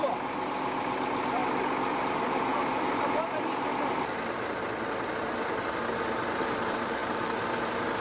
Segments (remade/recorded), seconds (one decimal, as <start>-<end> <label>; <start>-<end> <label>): 0.0-1.4 remade; 1.4-2.0 recorded; 2.0-8.0 remade